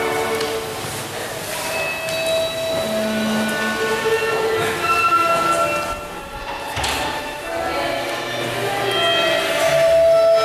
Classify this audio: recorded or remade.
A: recorded